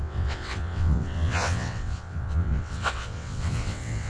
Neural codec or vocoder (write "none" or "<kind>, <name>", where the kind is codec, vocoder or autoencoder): vocoder, WaveNeXt